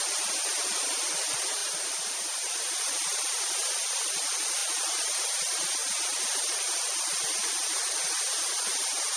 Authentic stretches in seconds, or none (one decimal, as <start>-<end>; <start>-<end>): 0.0-1.6; 2.2-4.6; 5.2-9.2